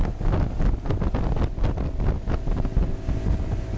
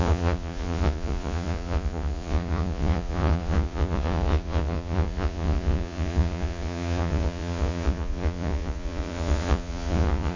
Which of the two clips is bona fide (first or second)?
first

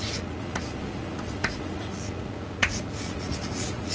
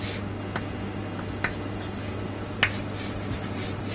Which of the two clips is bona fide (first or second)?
second